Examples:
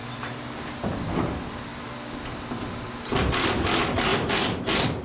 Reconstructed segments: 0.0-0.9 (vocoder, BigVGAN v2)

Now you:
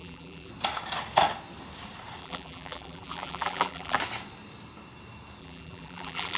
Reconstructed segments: 0.0-0.5 (vocoder, BigVGAN v2); 2.2-4.0; 5.4-6.4

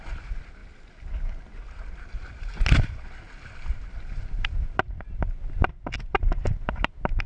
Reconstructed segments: none

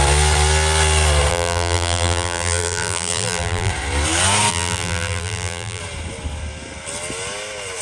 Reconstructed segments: 1.3-3.7 (vocoder, BigVGAN v2); 4.5-5.8

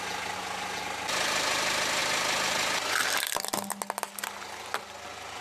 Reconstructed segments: none